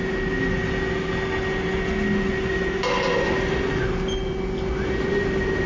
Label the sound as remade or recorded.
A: recorded